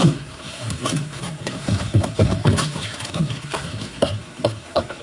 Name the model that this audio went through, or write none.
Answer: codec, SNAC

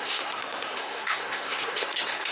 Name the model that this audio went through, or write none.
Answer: codec, SNAC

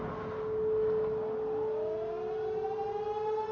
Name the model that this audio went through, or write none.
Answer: none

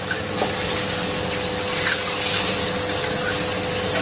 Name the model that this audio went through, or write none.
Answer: none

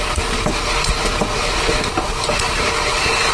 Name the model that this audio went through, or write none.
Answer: none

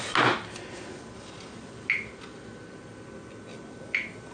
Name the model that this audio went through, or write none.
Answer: none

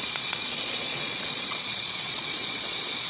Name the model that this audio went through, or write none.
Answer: vocoder, Vocos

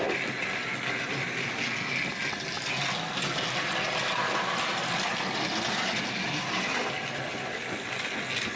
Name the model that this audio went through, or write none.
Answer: none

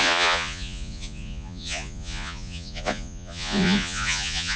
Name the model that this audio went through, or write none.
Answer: vocoder, Vocos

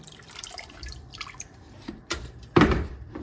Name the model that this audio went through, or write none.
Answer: vocoder, BigVGAN v2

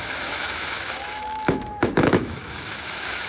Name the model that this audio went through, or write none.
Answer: autoencoder, DAC-VAE